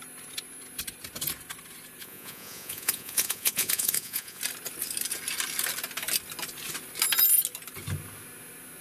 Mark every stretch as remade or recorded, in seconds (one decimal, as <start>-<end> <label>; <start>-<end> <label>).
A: 0.0-2.0 recorded; 2.0-4.4 remade; 4.4-8.8 recorded